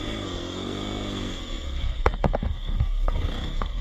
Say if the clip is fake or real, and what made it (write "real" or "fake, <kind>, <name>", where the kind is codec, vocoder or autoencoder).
fake, codec, SNAC